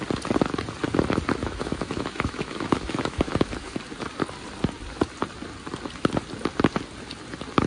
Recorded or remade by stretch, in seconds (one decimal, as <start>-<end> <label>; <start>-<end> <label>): 0.0-1.4 recorded; 1.4-3.8 remade; 3.8-7.7 recorded